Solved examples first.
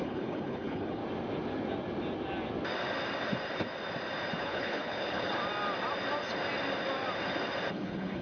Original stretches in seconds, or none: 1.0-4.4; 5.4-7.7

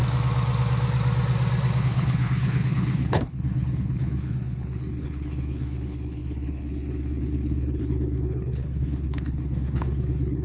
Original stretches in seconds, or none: 0.0-1.8

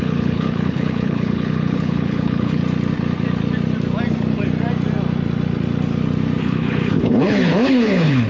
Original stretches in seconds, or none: 2.6-6.4

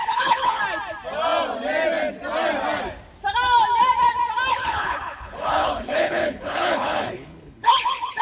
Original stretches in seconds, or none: 0.6-4.5

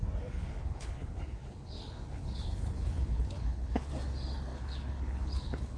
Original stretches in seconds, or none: 0.0-0.4; 3.9-4.5

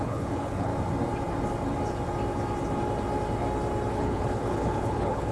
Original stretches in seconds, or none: 0.7-3.9

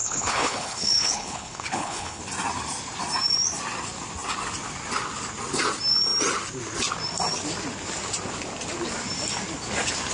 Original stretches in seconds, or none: 2.2-10.1